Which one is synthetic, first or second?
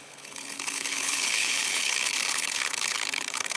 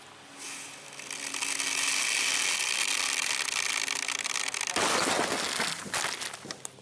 first